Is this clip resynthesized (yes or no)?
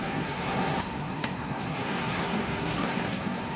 yes